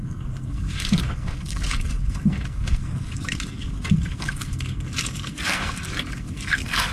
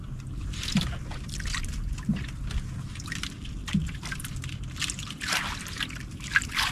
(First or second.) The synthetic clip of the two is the first